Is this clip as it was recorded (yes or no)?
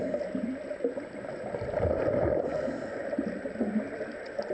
yes